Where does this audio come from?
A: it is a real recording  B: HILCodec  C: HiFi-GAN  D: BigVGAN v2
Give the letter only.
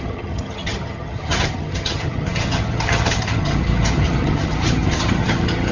C